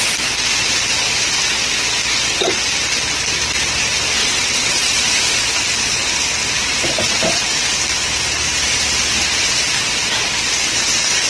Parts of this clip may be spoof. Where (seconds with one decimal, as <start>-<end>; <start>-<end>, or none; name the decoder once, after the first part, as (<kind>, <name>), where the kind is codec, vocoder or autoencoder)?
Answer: 4.2-5.0 (vocoder, WaveNeXt)